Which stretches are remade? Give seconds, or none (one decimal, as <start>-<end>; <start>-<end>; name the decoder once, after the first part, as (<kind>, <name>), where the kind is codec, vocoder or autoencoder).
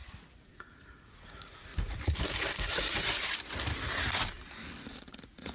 0.0-1.7 (vocoder, Vocos); 4.8-5.5